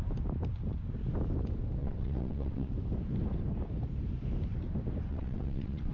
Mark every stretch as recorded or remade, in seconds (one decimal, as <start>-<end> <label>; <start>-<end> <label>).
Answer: 0.0-1.8 recorded; 1.8-2.7 remade; 2.7-5.1 recorded; 5.1-5.9 remade